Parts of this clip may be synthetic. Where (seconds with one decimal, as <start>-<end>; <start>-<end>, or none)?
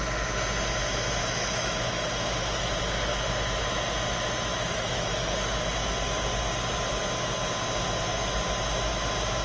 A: 1.2-2.8; 4.5-5.3